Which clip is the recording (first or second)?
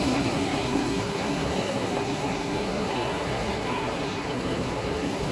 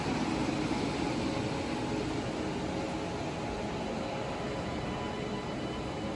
second